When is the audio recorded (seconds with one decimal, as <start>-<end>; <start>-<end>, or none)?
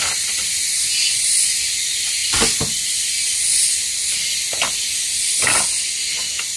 0.0-6.6